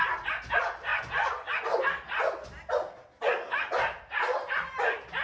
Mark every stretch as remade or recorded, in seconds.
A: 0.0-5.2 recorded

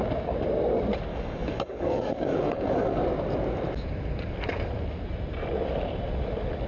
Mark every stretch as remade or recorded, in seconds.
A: 0.0-1.1 recorded; 1.1-3.0 remade; 3.0-6.7 recorded